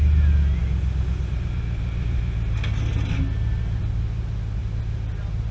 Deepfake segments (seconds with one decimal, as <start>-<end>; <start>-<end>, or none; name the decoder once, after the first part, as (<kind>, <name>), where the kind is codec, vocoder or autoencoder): none